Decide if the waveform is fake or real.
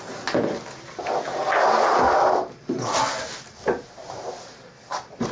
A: real